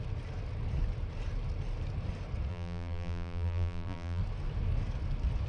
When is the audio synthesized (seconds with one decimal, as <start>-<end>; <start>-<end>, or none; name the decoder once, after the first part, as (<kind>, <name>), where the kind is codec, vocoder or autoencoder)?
2.5-4.2 (vocoder, BigVGAN v2)